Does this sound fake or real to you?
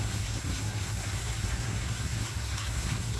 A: fake